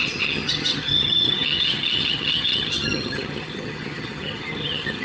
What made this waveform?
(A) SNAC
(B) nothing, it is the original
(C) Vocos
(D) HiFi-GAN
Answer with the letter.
D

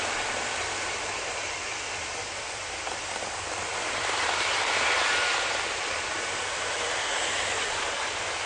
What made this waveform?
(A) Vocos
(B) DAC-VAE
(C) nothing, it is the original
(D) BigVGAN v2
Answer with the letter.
D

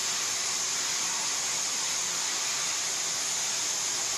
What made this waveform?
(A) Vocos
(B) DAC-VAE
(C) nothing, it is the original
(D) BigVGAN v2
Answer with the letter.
C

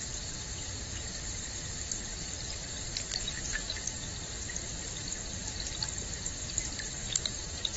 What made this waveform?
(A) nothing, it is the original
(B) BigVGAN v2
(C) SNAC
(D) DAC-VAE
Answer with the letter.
B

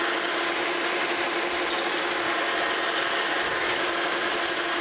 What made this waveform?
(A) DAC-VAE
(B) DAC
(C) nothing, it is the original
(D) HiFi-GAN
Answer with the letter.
C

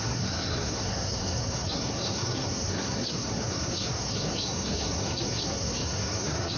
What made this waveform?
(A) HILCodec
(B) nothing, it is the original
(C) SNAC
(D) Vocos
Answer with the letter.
C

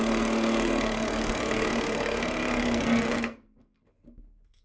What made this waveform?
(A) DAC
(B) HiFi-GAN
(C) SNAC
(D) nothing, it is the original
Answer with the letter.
C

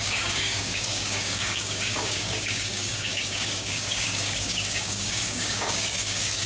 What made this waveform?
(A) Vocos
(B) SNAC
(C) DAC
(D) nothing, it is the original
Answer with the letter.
C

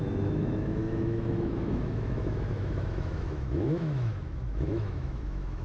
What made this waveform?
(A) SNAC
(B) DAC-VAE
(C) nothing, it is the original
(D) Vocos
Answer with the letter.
B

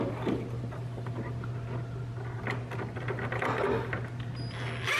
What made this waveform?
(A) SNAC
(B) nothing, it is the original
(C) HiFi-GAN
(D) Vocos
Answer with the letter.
B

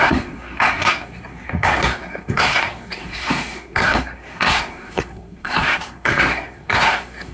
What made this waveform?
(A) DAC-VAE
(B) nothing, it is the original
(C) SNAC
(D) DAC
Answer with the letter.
C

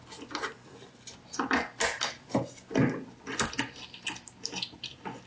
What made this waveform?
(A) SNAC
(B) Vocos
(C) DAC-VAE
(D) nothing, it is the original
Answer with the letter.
D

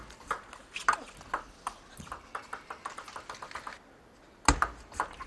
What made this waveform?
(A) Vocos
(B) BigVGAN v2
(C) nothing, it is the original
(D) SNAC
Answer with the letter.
C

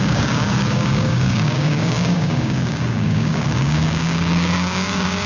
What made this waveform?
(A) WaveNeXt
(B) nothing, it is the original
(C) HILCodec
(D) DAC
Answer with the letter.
D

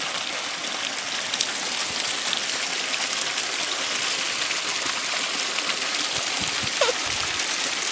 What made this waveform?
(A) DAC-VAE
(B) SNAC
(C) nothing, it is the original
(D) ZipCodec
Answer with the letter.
C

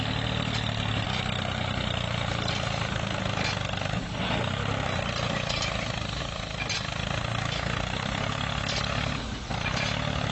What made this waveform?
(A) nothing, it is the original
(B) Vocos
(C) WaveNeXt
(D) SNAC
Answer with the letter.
A